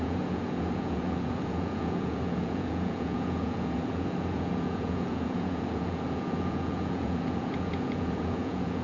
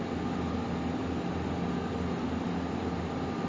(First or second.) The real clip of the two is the second